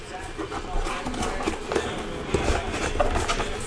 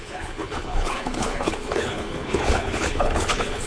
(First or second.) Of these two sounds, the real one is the first